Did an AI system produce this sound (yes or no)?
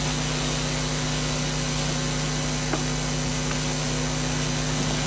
no